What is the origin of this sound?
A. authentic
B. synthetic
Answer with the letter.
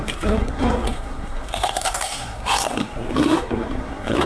B